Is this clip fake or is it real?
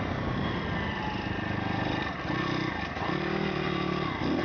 real